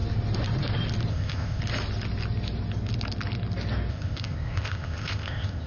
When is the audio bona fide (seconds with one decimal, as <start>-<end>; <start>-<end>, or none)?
0.0-1.1; 1.6-3.9